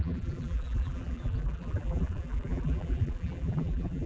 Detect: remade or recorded remade